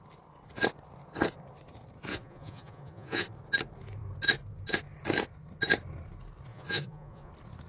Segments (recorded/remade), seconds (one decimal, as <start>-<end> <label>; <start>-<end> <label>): 0.0-2.1 recorded; 2.1-3.3 remade; 3.3-6.5 recorded; 6.5-7.3 remade; 7.3-7.7 recorded